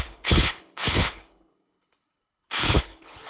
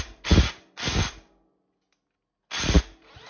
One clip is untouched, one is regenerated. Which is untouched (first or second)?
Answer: second